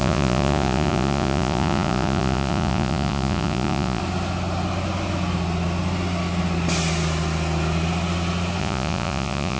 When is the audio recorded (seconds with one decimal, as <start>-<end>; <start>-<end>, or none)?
4.0-8.6